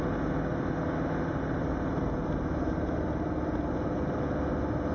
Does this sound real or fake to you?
real